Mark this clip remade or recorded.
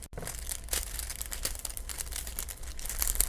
recorded